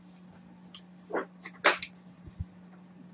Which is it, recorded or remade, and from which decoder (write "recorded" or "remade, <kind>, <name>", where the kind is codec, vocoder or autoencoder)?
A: recorded